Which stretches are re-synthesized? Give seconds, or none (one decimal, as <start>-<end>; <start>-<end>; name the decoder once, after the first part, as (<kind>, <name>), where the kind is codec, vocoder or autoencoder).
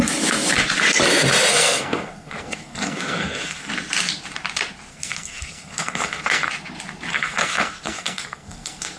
1.5-3.7 (codec, SNAC); 4.9-6.5; 7.1-9.0